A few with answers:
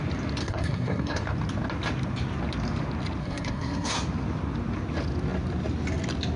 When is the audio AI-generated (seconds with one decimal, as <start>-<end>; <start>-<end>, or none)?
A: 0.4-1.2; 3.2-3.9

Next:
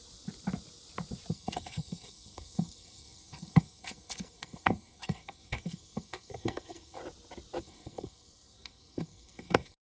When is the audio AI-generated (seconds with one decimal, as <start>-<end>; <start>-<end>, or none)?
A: 1.3-7.0; 7.6-9.9

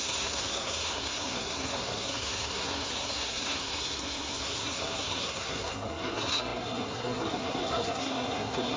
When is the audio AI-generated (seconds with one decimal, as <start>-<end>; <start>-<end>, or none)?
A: 0.0-8.8

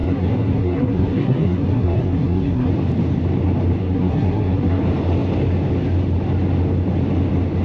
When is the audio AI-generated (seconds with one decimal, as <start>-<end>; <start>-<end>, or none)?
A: 0.0-2.7; 3.8-4.8